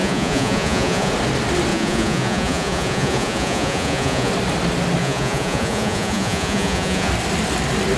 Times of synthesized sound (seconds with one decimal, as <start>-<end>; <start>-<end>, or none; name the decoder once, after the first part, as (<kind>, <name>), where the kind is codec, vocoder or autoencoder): 0.0-1.1 (vocoder, Vocos); 1.7-4.3; 5.0-7.1